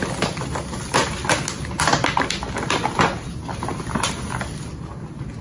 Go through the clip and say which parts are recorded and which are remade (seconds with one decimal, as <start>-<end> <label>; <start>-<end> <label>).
0.0-5.4 recorded